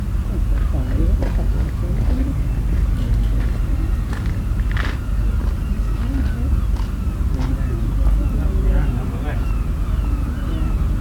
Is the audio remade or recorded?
recorded